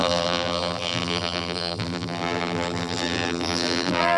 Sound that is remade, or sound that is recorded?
remade